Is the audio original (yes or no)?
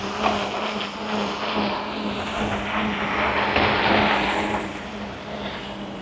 yes